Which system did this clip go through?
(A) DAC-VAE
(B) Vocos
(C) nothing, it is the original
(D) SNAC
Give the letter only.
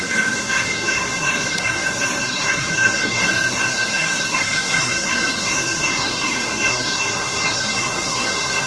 D